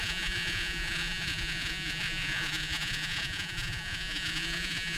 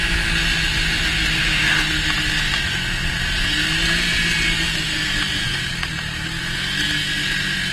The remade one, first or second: first